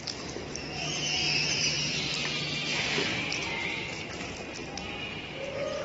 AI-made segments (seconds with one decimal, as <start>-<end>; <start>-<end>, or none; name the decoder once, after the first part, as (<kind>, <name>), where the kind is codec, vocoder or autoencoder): none